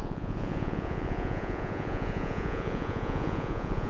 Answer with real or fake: fake